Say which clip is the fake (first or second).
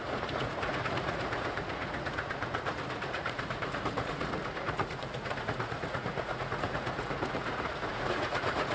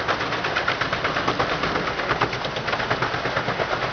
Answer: first